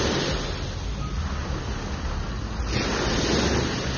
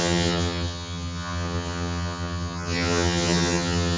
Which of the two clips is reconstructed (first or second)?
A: second